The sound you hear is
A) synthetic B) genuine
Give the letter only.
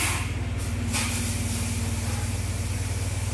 B